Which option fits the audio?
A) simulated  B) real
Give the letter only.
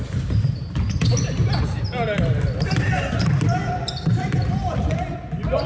B